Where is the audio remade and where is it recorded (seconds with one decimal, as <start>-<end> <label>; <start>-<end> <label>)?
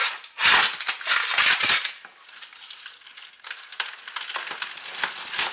0.0-5.5 recorded